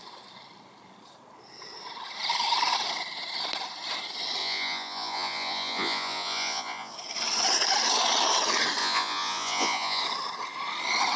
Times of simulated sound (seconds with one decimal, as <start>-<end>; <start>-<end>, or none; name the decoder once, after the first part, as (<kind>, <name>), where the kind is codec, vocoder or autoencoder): 4.4-6.9 (vocoder, Vocos); 8.8-10.0